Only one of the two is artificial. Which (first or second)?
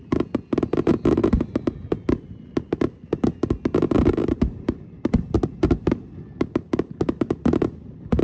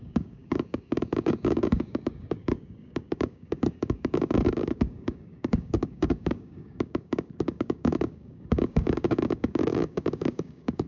second